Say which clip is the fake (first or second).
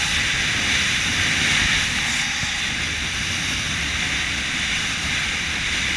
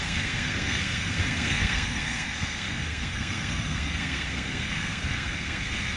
second